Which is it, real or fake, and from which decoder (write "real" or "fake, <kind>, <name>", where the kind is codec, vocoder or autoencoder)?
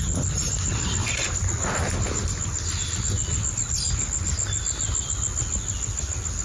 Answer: real